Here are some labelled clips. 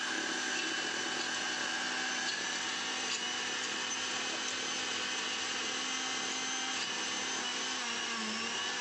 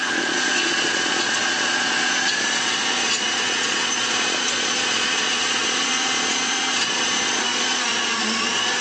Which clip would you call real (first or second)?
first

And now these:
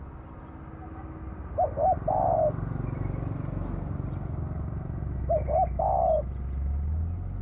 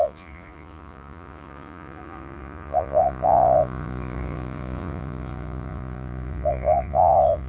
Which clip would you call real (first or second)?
first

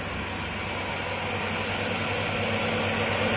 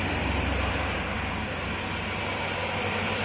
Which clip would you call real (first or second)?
first